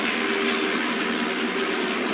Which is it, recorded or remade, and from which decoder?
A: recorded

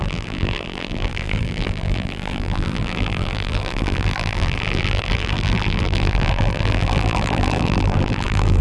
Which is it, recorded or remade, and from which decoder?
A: remade, vocoder, BigVGAN v2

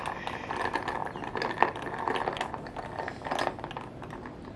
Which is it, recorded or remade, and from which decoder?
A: recorded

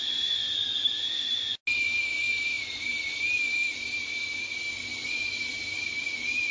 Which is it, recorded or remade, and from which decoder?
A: recorded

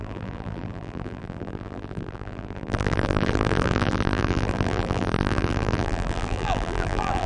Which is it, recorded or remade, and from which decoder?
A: remade, vocoder, BigVGAN v2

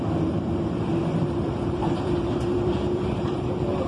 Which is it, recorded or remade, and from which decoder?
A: remade, vocoder, BigVGAN v2